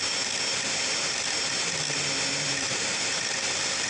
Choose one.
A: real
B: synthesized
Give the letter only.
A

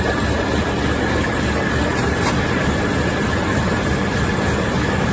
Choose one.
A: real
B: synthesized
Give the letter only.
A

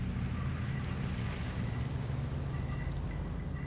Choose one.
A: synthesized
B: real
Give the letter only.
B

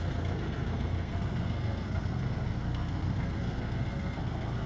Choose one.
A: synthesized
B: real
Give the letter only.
A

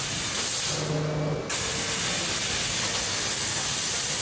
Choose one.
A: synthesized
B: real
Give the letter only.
B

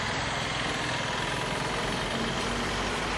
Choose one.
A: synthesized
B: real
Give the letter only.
B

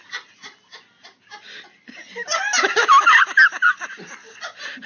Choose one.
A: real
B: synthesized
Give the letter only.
A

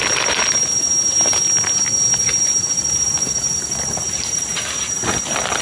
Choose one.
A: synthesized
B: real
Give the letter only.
B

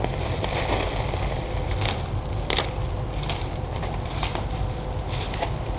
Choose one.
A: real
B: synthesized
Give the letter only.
B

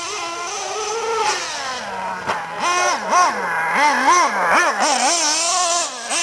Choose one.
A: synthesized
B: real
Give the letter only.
B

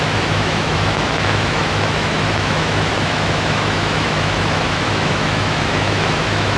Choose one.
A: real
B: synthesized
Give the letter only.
B